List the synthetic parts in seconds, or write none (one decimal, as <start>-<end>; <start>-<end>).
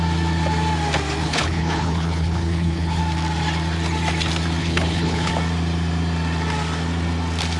1.2-3.0; 4.6-5.3